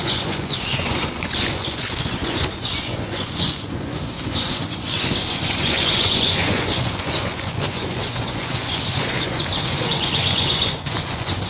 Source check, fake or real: fake